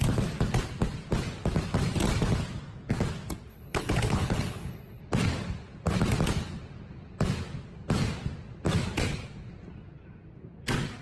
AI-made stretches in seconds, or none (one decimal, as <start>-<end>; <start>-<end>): 3.5-5.0